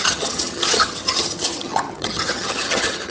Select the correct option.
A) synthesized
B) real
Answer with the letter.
A